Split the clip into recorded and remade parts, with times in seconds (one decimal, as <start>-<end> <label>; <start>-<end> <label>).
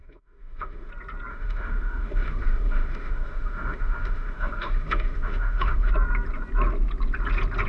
0.0-0.9 remade; 0.9-1.3 recorded; 1.3-5.9 remade; 5.9-7.7 recorded